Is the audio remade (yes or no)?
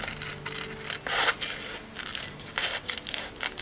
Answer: no